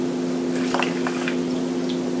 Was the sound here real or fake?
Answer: real